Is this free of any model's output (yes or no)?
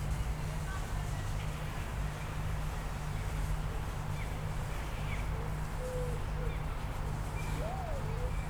yes